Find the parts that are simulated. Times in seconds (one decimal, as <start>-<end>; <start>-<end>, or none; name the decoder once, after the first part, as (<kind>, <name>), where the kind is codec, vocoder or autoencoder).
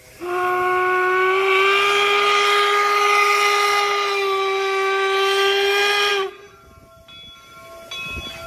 none